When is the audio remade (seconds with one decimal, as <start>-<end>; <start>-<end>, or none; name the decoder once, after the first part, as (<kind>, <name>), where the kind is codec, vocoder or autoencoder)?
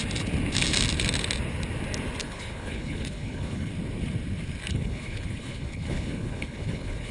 2.2-3.7 (codec, HILCodec); 4.7-7.1